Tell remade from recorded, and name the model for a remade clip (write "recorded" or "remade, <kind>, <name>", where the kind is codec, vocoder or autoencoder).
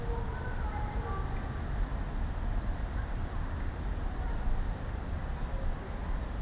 recorded